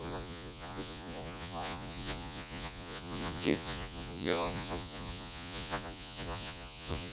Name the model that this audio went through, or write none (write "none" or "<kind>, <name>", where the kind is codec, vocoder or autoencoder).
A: vocoder, Vocos